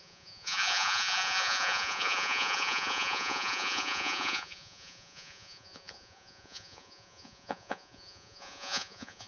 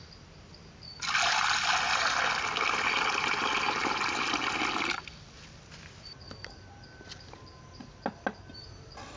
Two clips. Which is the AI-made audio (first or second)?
first